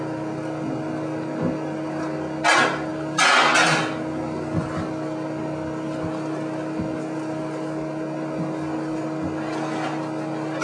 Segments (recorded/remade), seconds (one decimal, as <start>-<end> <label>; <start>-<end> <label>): 0.0-10.6 recorded